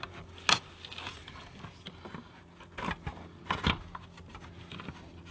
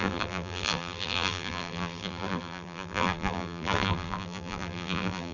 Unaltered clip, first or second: first